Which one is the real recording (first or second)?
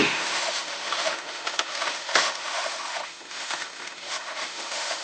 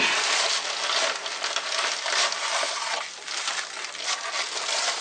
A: second